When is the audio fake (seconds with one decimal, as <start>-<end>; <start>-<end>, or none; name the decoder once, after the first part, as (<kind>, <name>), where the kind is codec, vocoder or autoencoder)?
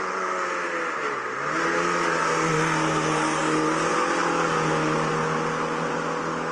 none